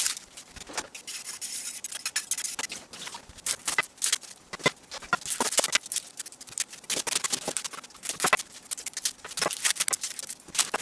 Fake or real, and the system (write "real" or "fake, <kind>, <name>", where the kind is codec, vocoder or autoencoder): real